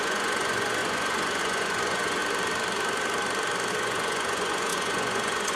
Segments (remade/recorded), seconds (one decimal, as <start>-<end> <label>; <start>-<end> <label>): 0.0-2.2 remade; 2.2-3.7 recorded; 3.7-5.6 remade